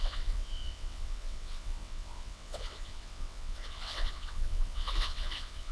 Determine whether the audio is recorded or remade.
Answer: remade